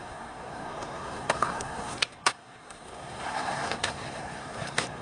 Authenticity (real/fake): fake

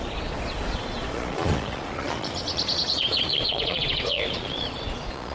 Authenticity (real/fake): fake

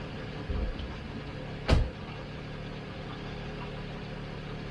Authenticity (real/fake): real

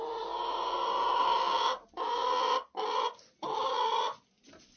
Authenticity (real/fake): real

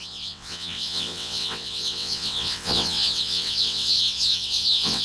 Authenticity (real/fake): fake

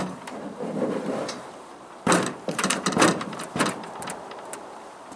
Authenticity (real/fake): fake